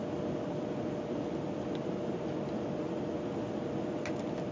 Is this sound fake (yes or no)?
no